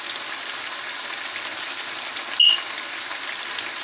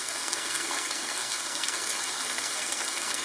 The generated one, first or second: second